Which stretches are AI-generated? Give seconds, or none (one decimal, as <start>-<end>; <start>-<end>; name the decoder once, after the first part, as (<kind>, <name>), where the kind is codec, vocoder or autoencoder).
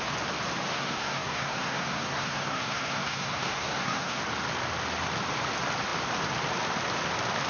0.7-4.2 (codec, SNAC)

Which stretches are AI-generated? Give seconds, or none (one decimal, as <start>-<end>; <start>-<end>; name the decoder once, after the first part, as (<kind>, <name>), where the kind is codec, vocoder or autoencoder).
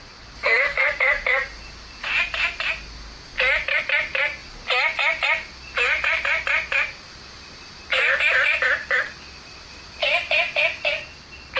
0.4-0.9 (codec, SNAC)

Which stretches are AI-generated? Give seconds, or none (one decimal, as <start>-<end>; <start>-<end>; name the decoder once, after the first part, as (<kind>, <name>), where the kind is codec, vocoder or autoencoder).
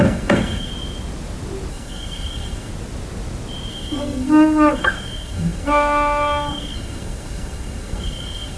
0.0-0.7 (codec, SNAC); 1.7-2.7; 3.7-8.6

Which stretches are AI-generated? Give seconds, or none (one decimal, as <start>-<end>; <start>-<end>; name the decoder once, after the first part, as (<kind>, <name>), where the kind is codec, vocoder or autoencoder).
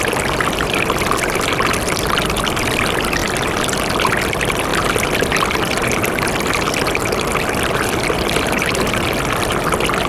none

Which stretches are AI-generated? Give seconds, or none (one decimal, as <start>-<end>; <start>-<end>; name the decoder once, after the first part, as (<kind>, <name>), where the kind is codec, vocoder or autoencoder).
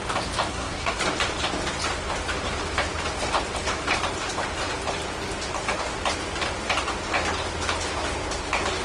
0.5-1.0 (codec, SNAC)